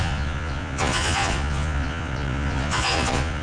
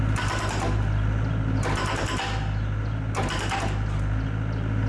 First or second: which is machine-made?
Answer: first